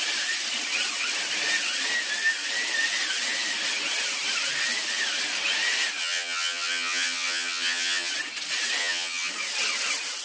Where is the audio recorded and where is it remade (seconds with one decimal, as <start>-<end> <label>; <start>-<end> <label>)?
0.0-6.0 recorded; 6.0-8.1 remade; 8.1-8.8 recorded; 8.8-9.3 remade; 9.3-10.2 recorded